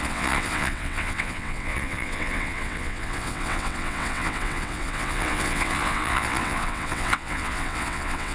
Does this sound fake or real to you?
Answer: fake